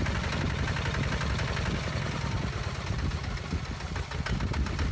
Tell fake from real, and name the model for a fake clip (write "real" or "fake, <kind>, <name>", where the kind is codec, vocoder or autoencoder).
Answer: real